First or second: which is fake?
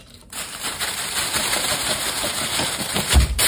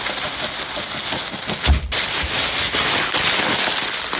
first